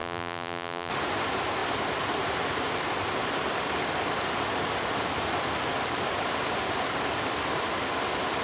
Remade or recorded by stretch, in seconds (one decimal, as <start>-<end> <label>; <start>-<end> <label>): 0.0-0.9 remade; 0.9-8.4 recorded